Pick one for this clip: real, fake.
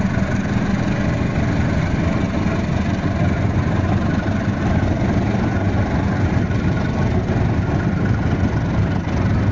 real